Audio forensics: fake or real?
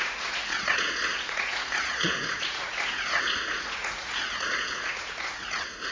fake